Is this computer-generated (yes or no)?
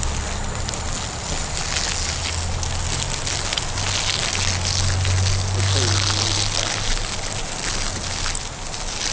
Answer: no